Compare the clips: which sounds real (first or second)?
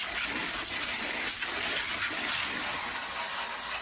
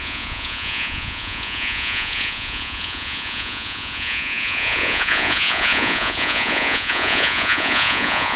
first